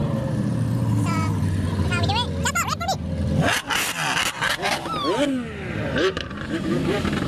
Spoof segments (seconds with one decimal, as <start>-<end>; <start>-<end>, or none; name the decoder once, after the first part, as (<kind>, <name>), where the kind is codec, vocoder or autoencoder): 0.0-2.1 (vocoder, BigVGAN v2); 5.7-7.3